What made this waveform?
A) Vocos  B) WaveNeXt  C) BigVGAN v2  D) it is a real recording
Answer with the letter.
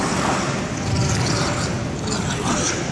D